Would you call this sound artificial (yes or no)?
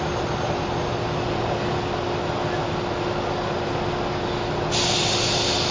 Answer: no